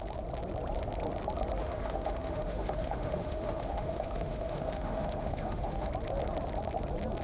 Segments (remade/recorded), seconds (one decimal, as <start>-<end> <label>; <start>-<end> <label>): 0.0-1.6 recorded; 1.6-5.9 remade; 5.9-7.2 recorded